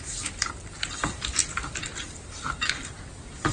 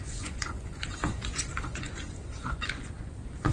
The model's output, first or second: second